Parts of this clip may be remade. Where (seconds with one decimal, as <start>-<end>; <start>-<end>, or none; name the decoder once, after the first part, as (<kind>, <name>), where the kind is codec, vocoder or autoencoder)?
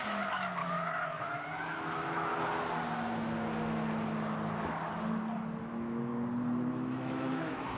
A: 0.0-0.6 (autoencoder, DAC-VAE); 1.2-2.3; 5.6-6.1; 6.7-7.8